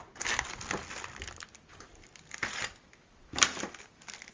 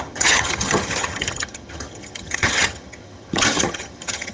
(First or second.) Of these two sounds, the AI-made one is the second